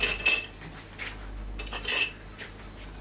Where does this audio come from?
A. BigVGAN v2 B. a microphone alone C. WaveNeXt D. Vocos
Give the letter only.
B